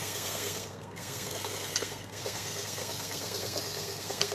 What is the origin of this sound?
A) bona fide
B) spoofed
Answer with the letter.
B